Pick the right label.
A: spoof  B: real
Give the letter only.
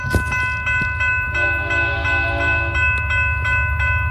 B